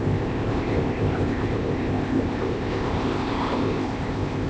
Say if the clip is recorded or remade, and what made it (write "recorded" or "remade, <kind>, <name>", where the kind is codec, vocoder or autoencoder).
remade, codec, ZipCodec